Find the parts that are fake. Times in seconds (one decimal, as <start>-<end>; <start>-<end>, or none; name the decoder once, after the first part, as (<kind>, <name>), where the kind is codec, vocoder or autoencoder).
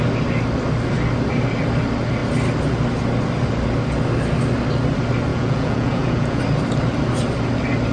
5.3-6.4 (vocoder, Vocos)